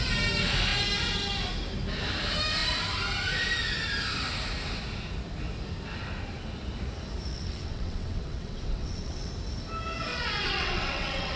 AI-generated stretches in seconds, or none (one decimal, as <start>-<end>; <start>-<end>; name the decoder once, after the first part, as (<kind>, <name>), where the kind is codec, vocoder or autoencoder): 7.3-9.3 (vocoder, WaveNeXt); 10.1-11.4